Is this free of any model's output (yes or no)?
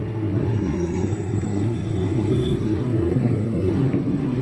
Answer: no